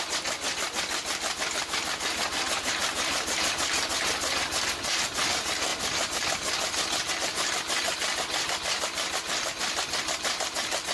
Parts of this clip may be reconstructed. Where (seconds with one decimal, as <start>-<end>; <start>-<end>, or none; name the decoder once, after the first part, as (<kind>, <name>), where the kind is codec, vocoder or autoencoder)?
none